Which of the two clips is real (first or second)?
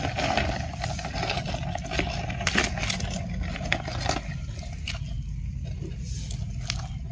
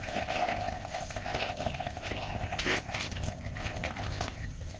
first